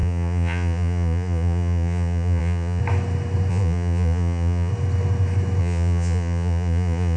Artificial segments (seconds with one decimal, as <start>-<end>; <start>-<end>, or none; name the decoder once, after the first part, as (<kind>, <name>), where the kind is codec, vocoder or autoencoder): 0.0-2.8 (vocoder, Vocos); 3.5-4.7; 5.6-7.2